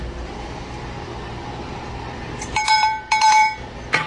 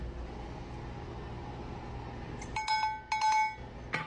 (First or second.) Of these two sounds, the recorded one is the second